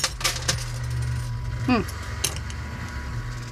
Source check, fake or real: real